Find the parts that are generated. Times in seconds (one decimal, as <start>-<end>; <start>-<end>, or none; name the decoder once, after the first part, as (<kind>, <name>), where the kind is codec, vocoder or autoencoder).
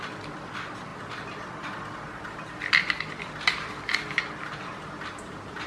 none